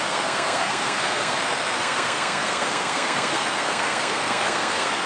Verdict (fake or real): fake